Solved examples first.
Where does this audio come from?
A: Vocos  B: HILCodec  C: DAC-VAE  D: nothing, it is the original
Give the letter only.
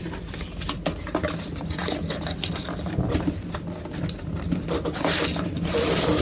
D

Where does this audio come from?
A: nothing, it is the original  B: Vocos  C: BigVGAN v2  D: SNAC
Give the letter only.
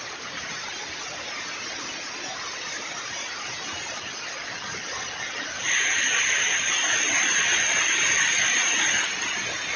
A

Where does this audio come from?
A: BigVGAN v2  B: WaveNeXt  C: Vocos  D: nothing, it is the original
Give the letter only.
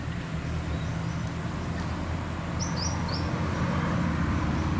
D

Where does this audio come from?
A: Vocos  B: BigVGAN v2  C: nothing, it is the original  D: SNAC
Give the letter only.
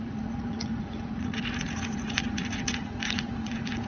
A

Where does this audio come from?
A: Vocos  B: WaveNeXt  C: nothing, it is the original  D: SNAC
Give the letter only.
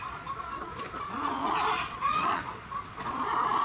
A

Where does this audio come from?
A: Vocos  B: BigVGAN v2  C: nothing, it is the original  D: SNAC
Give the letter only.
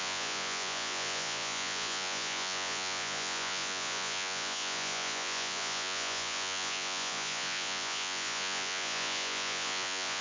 A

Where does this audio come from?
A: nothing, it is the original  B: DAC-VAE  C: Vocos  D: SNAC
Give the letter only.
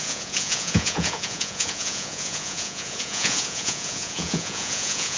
C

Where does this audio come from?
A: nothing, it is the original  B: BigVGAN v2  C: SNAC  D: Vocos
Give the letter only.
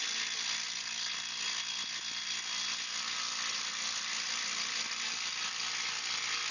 A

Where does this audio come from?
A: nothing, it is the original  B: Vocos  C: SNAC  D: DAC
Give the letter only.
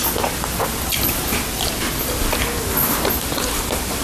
A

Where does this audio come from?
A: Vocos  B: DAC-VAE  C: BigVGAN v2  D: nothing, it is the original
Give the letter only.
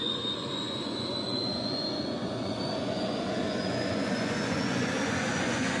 A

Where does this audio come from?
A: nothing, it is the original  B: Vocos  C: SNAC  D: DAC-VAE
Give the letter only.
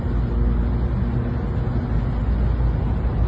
A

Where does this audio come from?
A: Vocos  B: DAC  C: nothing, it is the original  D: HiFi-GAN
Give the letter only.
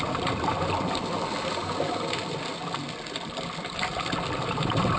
C